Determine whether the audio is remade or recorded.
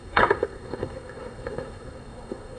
remade